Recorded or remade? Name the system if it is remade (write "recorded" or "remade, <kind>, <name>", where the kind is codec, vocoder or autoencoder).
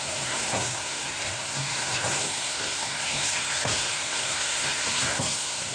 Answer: remade, codec, SNAC